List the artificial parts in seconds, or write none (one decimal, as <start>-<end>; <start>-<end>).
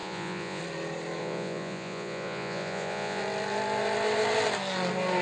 0.0-0.6; 1.2-3.2